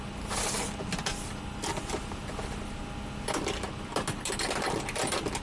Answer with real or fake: real